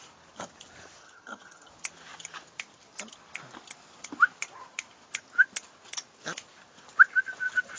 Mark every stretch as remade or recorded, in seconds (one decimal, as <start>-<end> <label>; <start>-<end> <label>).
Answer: 0.0-1.0 recorded; 1.0-1.7 remade; 1.7-7.8 recorded